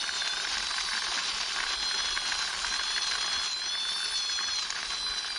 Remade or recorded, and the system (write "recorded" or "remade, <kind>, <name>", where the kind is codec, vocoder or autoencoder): recorded